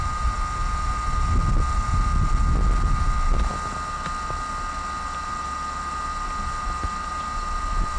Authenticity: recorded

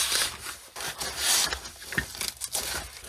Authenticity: recorded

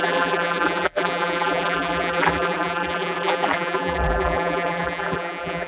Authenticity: remade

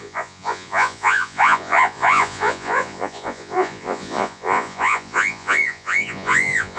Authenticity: remade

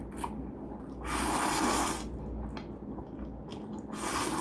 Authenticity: recorded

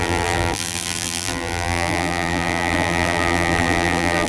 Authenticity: remade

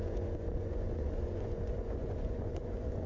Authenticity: remade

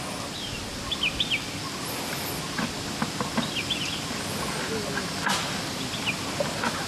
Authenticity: recorded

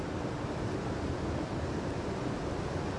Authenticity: recorded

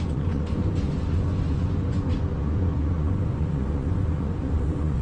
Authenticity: remade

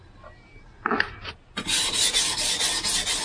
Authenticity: recorded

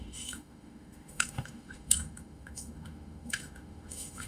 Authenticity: remade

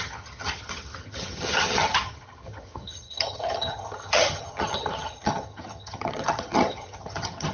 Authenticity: remade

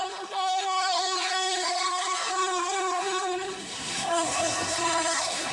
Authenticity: remade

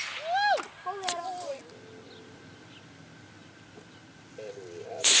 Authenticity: recorded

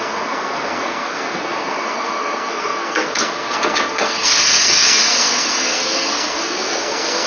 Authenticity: remade